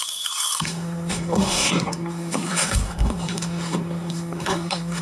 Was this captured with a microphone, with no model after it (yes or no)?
no